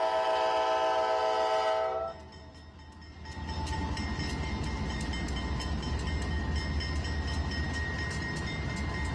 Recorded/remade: recorded